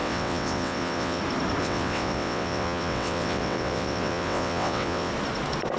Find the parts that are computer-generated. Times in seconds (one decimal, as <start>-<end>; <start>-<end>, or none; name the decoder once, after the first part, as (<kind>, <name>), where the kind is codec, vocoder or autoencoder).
0.0-1.2 (vocoder, WaveNeXt); 1.6-5.1